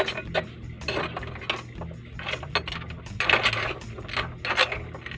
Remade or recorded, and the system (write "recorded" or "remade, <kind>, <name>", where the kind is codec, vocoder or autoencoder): recorded